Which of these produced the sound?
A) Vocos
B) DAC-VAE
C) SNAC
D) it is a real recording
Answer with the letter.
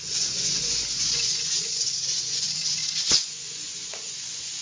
A